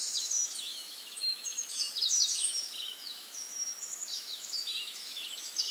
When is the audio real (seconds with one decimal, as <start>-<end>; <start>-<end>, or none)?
none